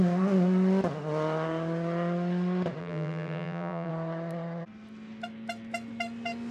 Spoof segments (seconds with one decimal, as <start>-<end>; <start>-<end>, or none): 2.8-3.9